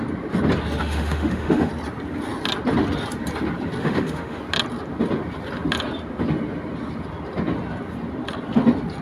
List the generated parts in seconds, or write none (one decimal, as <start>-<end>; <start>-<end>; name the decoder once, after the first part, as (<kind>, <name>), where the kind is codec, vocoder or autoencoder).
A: 0.8-1.7 (autoencoder, DAC-VAE); 3.8-4.4